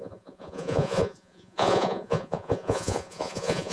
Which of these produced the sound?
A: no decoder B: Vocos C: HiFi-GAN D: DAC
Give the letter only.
B